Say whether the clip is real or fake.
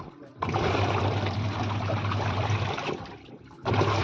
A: fake